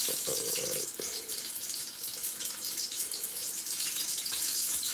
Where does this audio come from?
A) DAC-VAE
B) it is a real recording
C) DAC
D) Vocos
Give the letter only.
A